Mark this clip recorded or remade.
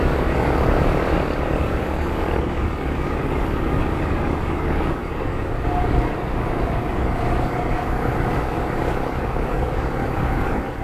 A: remade